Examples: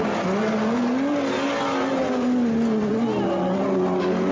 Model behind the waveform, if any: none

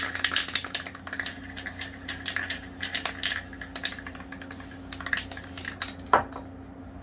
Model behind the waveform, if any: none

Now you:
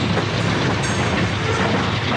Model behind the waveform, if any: none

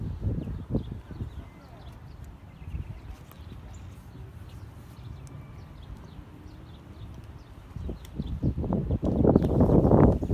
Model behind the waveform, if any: none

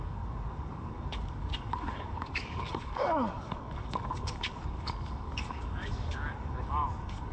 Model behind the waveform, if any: codec, DAC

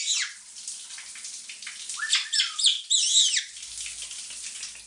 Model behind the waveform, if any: none